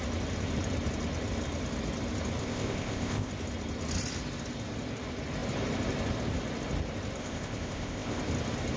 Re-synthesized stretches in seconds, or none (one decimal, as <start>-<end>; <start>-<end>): 2.4-3.3; 7.2-8.2